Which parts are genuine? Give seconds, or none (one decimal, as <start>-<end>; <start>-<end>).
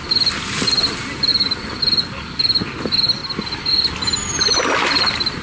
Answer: 0.0-5.4